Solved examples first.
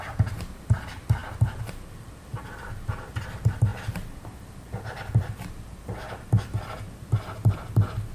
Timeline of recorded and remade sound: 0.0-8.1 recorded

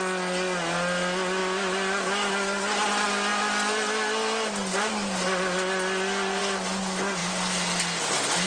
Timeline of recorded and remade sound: 0.0-8.5 recorded

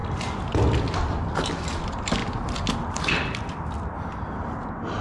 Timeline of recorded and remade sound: 0.0-5.0 recorded

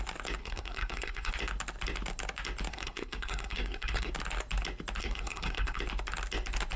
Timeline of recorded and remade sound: 0.0-0.4 recorded; 0.4-1.3 remade; 1.3-2.7 recorded; 2.7-4.1 remade; 4.1-5.0 recorded; 5.0-5.8 remade; 5.8-6.8 recorded

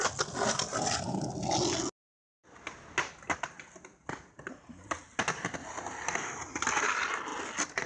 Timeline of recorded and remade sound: 0.0-7.9 recorded

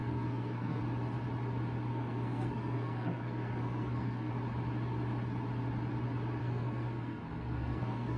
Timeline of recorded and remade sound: 0.0-0.8 remade; 0.8-1.9 recorded; 1.9-4.3 remade; 4.3-6.4 recorded; 6.4-8.2 remade

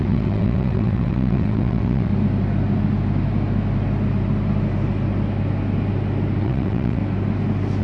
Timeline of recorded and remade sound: 0.0-2.1 remade; 2.1-6.4 recorded; 6.4-7.0 remade; 7.0-7.8 recorded